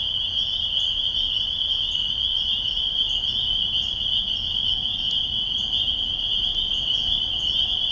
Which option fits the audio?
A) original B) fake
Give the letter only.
A